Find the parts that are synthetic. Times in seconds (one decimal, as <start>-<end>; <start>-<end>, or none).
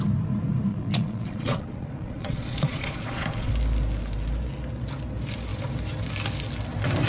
0.7-3.5